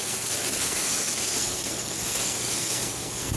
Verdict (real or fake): fake